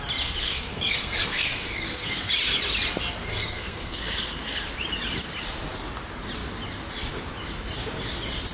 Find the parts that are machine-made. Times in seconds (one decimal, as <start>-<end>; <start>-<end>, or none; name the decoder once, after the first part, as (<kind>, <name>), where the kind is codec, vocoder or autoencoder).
0.4-2.3 (codec, SNAC); 3.3-4.6